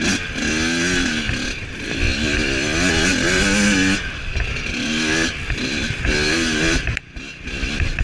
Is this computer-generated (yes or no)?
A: no